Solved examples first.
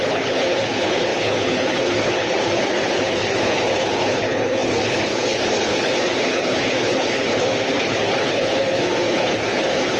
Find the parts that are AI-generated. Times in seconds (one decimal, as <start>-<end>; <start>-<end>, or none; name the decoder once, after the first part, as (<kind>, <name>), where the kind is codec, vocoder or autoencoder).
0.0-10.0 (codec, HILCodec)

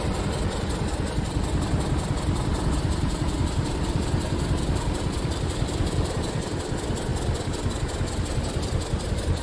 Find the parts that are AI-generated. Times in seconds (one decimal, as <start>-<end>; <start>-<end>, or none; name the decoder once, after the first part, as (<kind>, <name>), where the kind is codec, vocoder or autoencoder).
2.5-6.6 (vocoder, BigVGAN v2)

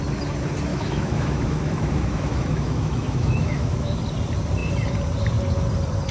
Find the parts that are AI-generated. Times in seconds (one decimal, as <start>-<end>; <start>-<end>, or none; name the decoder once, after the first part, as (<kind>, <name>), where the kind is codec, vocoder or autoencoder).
0.7-4.0 (autoencoder, DAC-VAE)

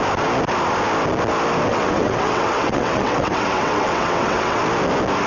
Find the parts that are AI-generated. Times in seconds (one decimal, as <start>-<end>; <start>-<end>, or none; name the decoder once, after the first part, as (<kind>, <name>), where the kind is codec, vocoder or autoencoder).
1.7-4.6 (vocoder, WaveNeXt)

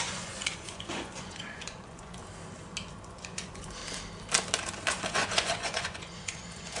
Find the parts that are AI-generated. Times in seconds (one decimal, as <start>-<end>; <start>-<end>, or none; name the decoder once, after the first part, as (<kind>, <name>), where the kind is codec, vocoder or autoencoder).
0.0-2.2 (vocoder, Vocos); 2.9-3.8; 4.9-6.8

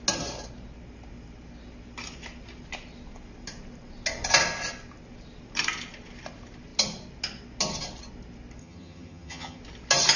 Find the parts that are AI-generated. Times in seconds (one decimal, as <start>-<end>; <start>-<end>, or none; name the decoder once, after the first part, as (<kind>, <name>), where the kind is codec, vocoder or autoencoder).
8.6-9.6 (vocoder, HiFi-GAN)